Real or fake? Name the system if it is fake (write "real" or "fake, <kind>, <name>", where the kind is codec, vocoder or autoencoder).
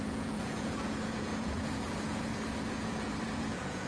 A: fake, vocoder, Vocos